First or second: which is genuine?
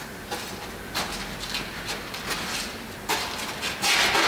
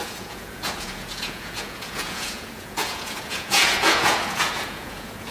first